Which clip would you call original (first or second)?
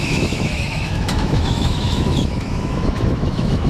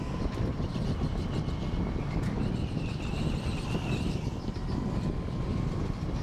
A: second